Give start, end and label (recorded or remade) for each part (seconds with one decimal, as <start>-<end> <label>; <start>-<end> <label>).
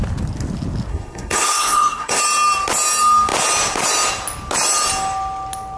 0.0-0.9 recorded; 0.9-2.2 remade; 2.2-5.8 recorded